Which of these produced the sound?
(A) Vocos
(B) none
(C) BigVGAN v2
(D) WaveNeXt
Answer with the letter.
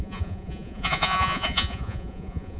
A